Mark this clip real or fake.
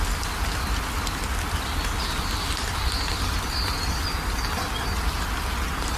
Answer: real